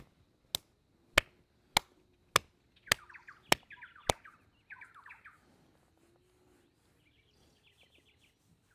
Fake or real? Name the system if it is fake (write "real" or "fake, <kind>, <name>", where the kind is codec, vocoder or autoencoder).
real